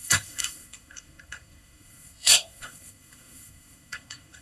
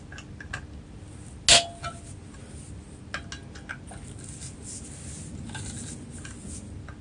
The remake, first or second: first